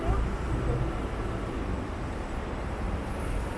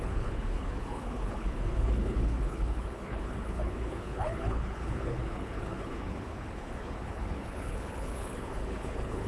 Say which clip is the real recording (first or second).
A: first